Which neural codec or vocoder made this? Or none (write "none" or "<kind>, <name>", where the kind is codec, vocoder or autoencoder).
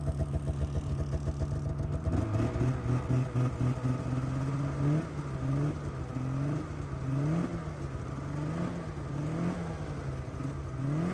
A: none